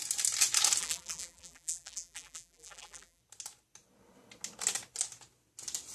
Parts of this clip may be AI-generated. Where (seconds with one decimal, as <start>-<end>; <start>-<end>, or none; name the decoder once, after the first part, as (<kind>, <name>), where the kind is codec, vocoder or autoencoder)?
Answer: 0.8-3.2 (vocoder, BigVGAN v2)